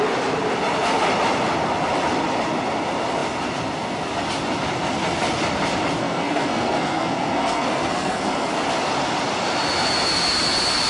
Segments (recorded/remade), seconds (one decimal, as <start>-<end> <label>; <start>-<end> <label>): 0.0-6.0 recorded; 6.0-8.5 remade; 8.5-10.9 recorded